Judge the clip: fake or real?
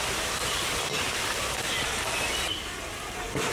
real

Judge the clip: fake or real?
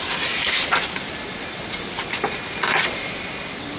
real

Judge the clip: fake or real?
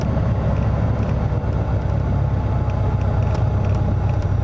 real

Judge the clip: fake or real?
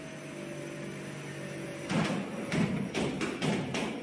real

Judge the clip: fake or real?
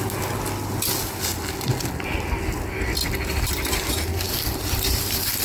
real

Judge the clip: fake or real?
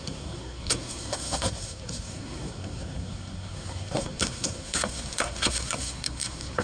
fake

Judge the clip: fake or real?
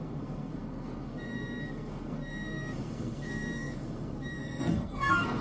fake